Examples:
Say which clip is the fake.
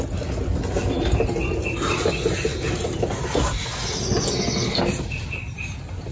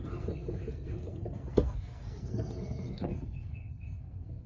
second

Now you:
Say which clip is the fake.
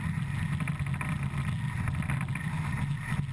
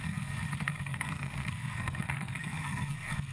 second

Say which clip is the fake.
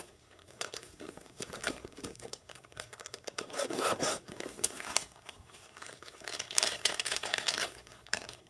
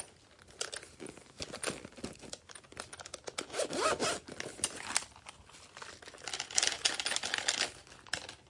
first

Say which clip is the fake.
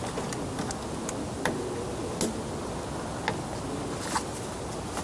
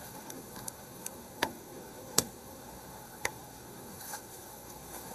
second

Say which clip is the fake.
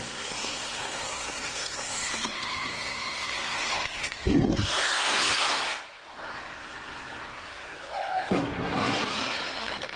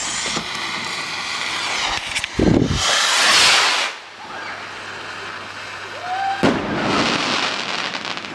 first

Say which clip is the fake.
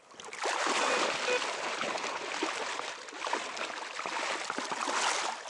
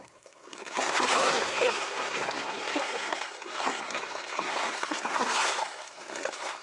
second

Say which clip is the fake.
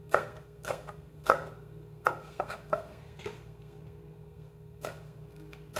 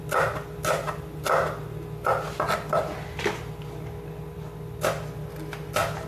first